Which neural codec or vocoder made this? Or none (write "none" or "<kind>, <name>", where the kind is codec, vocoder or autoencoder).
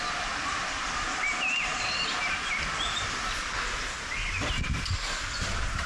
none